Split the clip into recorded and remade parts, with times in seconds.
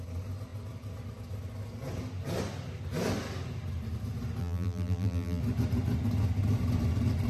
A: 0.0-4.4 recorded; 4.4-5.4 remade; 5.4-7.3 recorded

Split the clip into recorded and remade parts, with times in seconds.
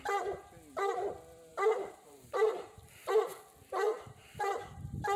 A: 0.0-1.5 recorded; 1.5-2.8 remade; 2.8-3.9 recorded; 3.9-4.5 remade; 4.5-5.2 recorded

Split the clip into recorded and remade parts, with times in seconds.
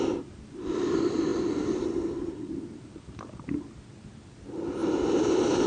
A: 0.0-1.3 recorded; 1.3-3.6 remade; 3.6-4.8 recorded; 4.8-5.7 remade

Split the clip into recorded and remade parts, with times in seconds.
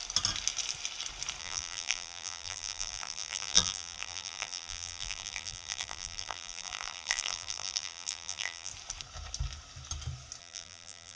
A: 0.0-1.4 recorded; 1.4-8.7 remade; 8.7-10.4 recorded; 10.4-11.2 remade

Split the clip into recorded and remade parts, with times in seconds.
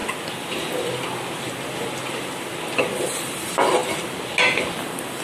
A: 0.0-5.2 recorded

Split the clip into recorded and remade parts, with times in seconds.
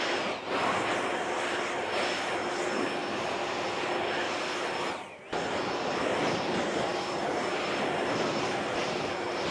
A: 0.0-6.9 recorded; 6.9-9.5 remade